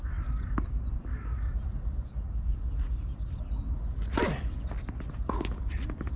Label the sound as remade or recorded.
recorded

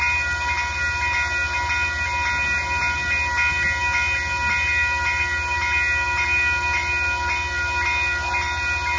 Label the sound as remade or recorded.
recorded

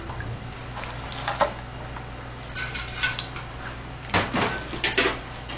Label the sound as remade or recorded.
recorded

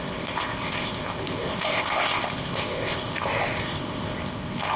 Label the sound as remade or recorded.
remade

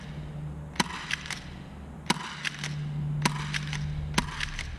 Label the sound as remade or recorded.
recorded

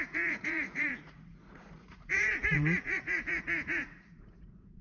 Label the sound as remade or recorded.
remade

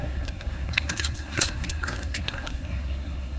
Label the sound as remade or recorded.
remade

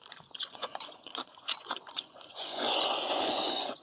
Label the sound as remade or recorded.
remade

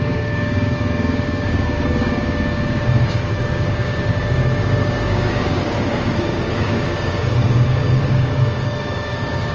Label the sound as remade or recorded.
remade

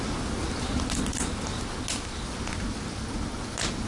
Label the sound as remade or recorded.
recorded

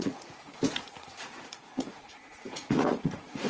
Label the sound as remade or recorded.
remade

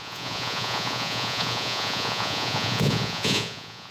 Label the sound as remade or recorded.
remade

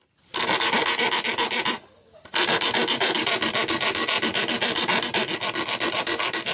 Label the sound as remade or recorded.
recorded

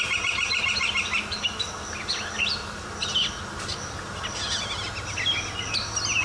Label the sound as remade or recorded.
recorded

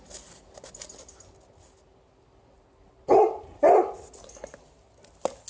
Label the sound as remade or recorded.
recorded